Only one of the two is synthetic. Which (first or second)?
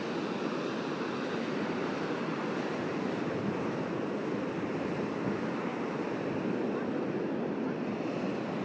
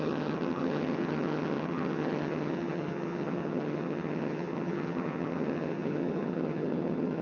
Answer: second